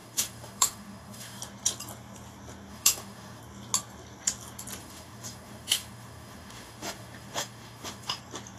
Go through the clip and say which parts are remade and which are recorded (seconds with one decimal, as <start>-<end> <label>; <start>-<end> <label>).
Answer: 0.0-1.4 remade; 1.4-2.7 recorded; 2.7-3.4 remade; 3.4-4.8 recorded; 4.8-8.2 remade; 8.2-8.6 recorded